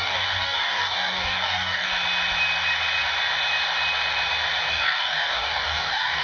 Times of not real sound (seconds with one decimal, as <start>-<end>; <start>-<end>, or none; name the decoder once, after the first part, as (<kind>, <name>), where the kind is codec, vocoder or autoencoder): 0.0-1.9 (codec, DAC); 4.7-6.2